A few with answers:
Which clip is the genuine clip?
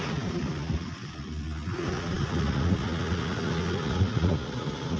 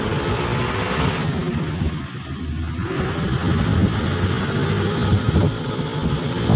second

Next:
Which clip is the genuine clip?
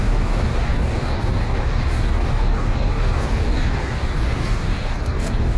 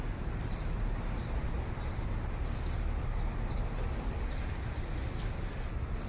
second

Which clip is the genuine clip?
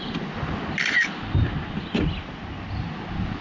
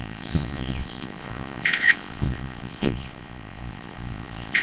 first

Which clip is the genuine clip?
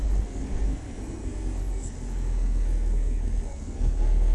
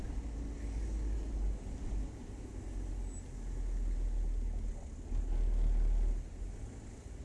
second